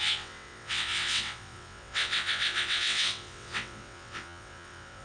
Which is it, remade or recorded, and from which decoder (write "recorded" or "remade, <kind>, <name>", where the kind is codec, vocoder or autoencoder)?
remade, vocoder, WaveNeXt